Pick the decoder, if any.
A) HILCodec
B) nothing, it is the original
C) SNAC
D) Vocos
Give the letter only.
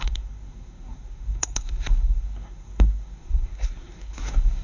C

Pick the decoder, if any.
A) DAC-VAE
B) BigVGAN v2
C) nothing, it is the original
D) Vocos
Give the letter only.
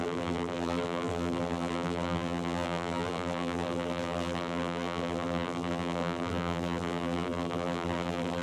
B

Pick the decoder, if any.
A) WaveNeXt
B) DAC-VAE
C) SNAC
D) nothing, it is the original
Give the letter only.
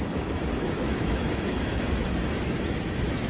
B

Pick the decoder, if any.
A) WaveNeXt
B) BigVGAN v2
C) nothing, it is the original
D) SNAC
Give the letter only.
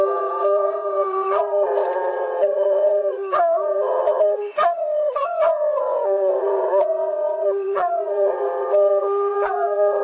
A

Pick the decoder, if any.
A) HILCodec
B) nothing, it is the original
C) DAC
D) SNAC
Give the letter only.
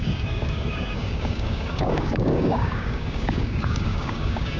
C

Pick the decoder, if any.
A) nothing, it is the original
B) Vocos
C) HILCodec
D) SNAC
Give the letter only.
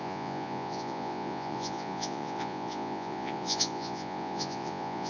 B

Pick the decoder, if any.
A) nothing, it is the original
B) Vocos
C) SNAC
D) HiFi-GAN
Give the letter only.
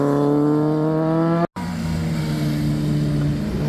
A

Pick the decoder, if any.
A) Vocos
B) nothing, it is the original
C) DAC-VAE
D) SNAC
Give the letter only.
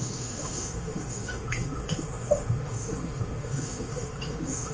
C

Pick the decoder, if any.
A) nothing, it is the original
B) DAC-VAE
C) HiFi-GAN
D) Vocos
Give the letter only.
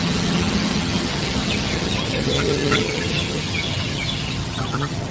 C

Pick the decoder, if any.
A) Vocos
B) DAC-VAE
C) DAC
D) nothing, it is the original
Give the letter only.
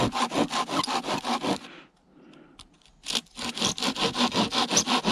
D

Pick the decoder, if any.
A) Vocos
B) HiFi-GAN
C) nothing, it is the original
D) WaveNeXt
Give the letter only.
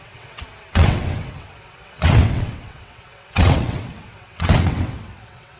D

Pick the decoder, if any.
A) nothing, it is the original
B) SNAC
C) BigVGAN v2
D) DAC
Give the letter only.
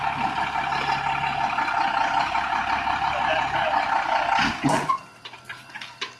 A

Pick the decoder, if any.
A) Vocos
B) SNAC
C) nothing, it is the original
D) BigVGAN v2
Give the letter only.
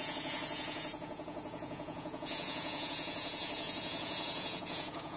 A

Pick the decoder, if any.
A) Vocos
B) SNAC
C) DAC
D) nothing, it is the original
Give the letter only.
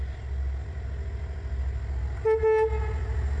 D